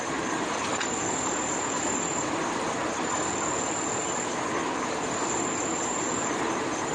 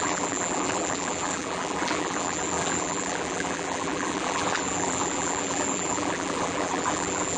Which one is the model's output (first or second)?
second